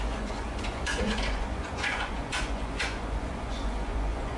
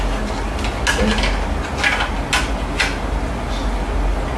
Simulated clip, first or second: first